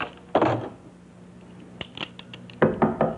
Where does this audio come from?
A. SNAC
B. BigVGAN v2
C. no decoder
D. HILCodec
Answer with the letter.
C